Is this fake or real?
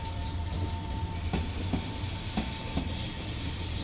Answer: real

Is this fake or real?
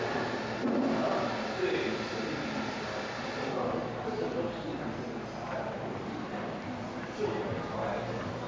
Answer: real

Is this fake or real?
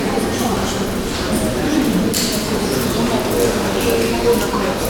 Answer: real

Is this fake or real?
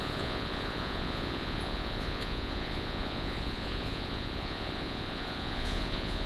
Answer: fake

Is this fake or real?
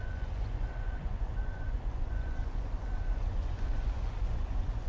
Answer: fake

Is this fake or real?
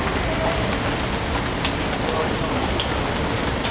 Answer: real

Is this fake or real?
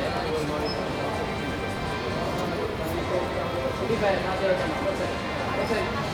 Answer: real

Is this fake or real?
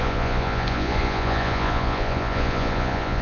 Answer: fake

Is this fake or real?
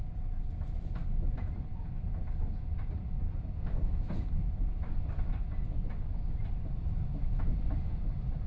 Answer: real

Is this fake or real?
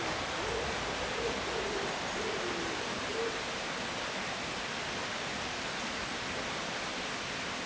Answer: real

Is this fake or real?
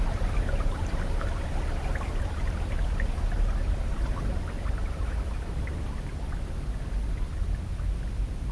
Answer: real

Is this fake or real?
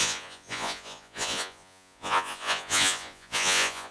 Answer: fake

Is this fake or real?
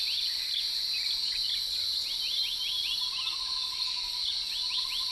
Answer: real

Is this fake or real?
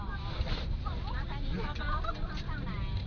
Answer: real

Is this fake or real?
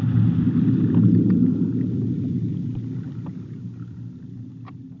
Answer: real